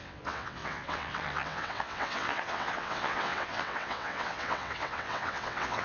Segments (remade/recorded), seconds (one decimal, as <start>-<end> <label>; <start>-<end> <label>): 0.0-5.8 remade